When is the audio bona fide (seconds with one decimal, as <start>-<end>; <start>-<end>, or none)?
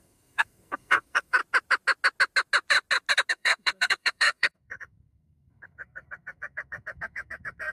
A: 1.4-3.3